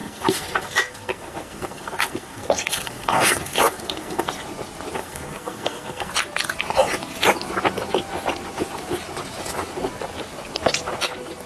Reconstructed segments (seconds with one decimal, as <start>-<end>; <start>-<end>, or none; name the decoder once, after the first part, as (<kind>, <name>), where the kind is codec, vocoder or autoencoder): 0.0-4.3 (codec, SNAC); 5.0-6.1